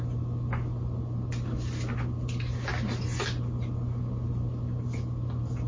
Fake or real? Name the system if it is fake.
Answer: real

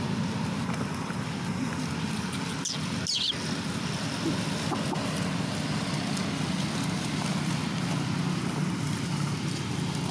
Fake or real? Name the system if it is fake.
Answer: real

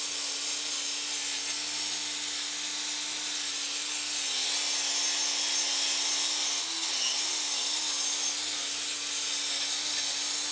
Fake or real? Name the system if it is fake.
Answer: real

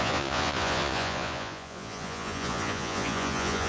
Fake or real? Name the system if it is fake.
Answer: fake, vocoder, Vocos